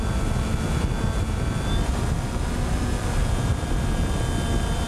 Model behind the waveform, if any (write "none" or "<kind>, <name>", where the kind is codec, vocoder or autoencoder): none